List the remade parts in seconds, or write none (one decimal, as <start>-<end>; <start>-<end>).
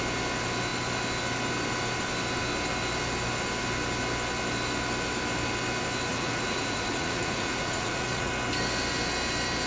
6.1-8.3